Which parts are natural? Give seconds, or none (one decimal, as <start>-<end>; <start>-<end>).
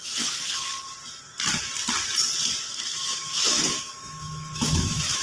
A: 0.7-2.6